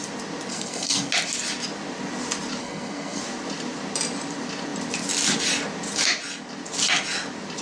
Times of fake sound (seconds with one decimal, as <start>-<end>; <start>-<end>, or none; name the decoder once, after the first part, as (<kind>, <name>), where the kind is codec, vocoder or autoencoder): 0.5-1.1 (codec, SNAC); 2.6-3.2